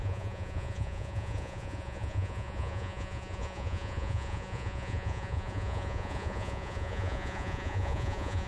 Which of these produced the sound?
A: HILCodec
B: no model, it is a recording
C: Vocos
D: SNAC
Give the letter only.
C